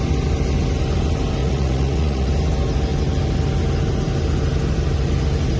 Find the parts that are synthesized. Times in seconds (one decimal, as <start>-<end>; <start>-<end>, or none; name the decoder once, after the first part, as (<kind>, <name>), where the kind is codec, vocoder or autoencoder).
1.4-2.3 (vocoder, Vocos)